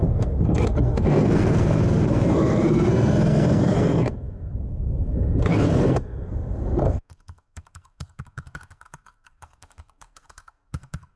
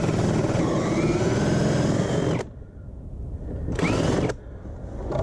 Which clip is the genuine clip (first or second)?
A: second